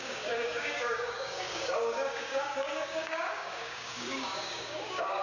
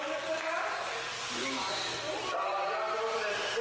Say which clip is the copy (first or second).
first